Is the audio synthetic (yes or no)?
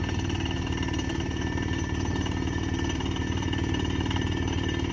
no